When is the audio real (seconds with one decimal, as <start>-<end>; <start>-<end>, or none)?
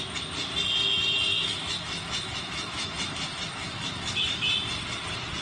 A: 0.0-1.3; 4.5-5.4